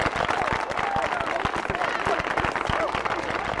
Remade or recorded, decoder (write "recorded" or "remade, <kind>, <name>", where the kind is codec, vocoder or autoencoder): recorded